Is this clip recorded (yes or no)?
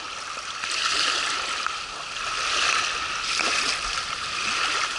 yes